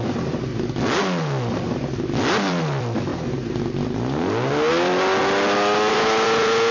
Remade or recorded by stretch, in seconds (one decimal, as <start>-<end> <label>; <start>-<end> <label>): 0.0-0.5 remade; 0.5-1.5 recorded; 1.5-3.1 remade; 3.1-4.7 recorded; 4.7-5.2 remade; 5.2-5.9 recorded; 5.9-6.7 remade